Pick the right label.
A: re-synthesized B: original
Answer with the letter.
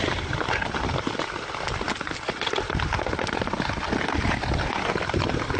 B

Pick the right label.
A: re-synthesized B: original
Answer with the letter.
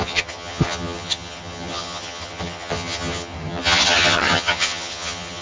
A